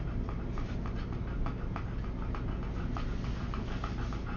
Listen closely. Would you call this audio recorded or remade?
recorded